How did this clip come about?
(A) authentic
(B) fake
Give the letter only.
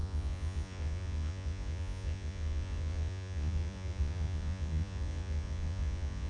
B